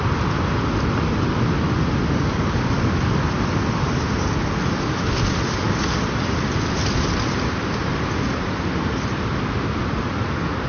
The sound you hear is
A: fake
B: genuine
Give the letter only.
B